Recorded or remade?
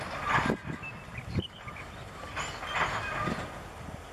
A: recorded